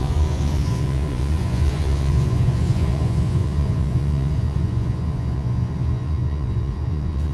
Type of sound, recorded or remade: remade